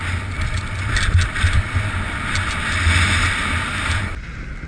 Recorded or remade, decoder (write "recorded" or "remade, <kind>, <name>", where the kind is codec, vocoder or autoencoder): recorded